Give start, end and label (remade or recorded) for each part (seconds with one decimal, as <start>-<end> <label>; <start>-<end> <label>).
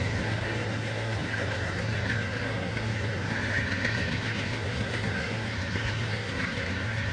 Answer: 0.0-7.1 remade